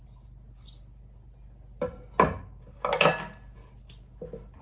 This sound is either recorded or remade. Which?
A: recorded